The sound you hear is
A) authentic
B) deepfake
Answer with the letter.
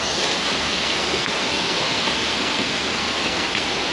B